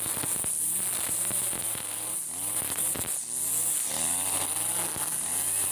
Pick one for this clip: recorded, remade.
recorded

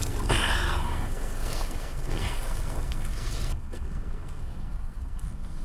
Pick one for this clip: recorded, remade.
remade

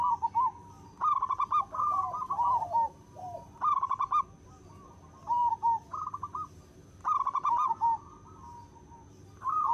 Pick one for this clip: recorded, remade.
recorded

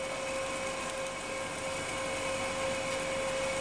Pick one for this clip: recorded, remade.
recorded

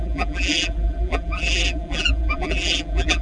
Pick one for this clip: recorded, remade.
remade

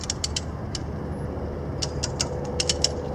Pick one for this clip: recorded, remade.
recorded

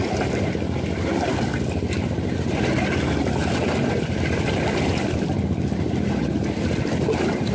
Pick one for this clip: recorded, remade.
recorded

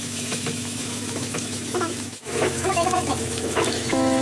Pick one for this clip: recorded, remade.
remade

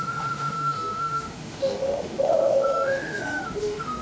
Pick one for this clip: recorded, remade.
remade